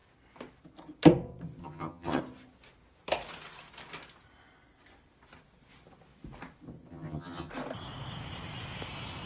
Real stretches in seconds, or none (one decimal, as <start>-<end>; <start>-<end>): 0.0-1.6; 2.2-6.9; 7.5-9.3